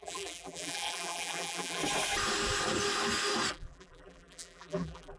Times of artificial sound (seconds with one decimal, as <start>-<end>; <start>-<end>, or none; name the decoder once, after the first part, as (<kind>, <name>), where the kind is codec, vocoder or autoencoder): 0.0-1.8 (vocoder, BigVGAN v2); 3.5-5.2